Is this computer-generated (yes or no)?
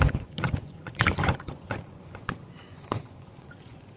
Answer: yes